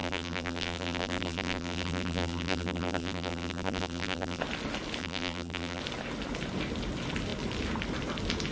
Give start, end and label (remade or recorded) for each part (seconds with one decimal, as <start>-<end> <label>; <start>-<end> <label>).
0.0-4.4 remade; 4.4-5.0 recorded; 5.0-5.8 remade; 5.8-8.5 recorded